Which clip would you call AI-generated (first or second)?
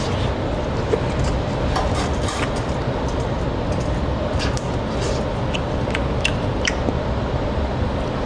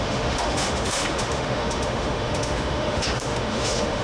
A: second